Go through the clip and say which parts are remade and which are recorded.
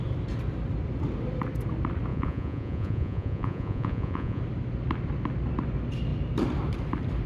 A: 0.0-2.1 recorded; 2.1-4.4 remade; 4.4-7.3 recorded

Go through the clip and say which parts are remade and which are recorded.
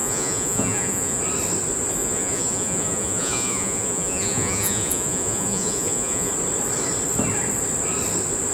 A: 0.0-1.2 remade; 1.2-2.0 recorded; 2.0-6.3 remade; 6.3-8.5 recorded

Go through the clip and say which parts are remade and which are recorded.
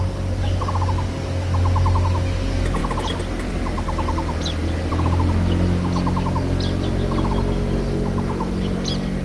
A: 0.0-9.2 recorded